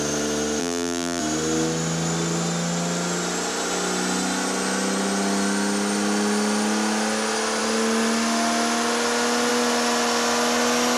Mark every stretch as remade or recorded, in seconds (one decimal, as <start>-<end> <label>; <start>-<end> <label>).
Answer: 0.0-0.6 recorded; 0.6-1.2 remade; 1.2-11.0 recorded